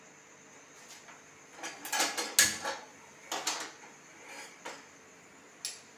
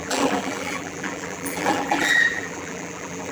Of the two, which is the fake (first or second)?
second